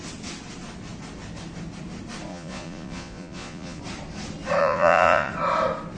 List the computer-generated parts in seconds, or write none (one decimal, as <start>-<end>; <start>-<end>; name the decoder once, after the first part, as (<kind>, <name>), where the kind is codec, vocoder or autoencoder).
2.3-3.8 (vocoder, Vocos); 4.6-5.3